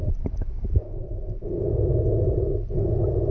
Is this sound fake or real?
real